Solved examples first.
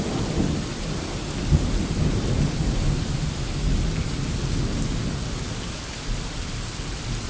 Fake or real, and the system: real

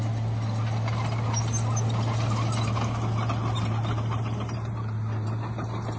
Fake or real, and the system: real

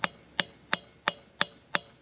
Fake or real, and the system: real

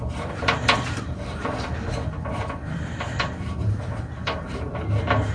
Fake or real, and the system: fake, vocoder, BigVGAN v2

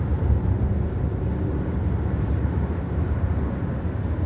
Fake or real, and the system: real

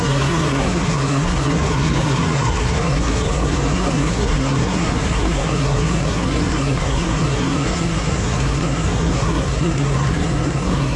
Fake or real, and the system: fake, codec, SNAC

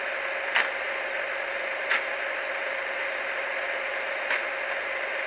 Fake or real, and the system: real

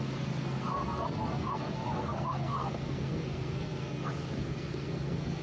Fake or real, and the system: fake, codec, SNAC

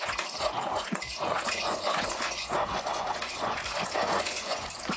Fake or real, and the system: fake, vocoder, Vocos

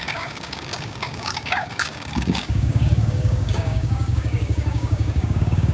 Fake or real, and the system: fake, codec, DAC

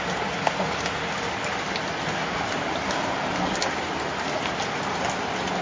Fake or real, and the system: real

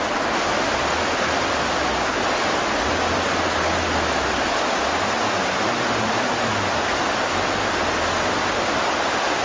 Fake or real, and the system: real